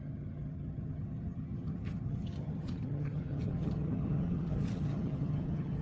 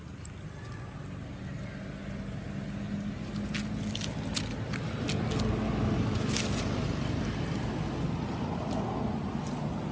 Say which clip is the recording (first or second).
second